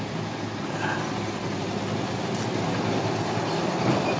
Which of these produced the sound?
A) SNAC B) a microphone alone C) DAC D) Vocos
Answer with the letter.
B